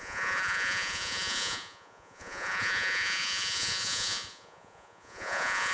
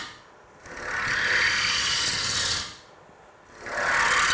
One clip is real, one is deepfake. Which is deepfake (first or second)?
first